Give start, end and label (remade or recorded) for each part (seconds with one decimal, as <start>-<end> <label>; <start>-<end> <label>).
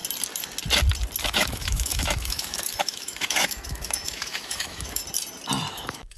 0.0-1.2 recorded; 1.2-5.0 remade; 5.0-5.7 recorded; 5.7-6.2 remade